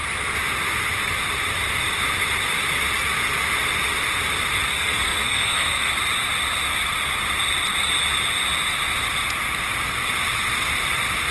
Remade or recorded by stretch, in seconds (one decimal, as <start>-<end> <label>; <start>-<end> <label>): 0.0-4.7 recorded; 4.7-5.9 remade; 5.9-11.3 recorded